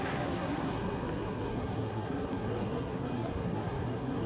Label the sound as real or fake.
fake